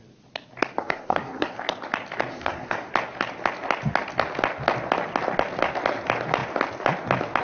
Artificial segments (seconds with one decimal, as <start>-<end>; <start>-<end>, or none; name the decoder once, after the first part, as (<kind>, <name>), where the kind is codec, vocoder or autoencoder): 0.8-1.6 (codec, SNAC); 2.3-2.9

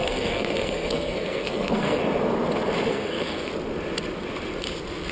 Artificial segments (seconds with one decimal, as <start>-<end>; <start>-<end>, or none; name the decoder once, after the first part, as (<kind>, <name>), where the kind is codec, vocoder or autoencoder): 0.0-2.0 (codec, SNAC); 2.9-3.5

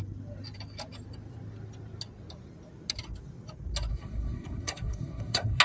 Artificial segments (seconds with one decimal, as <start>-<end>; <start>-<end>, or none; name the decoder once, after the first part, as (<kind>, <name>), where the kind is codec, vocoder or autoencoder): 3.9-5.6 (codec, SNAC)

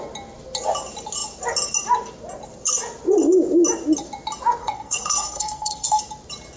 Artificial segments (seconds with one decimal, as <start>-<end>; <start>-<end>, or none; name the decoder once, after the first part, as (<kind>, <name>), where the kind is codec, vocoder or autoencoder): 4.6-6.0 (codec, SNAC)

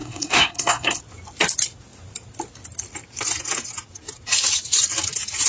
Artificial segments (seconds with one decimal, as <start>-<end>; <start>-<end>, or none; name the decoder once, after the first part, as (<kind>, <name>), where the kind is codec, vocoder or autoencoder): 0.0-1.0 (codec, SNAC)

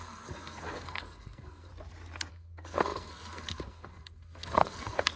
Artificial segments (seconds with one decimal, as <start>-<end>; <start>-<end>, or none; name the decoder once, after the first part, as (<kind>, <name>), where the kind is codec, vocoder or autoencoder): 0.0-1.7 (codec, SNAC); 2.3-5.2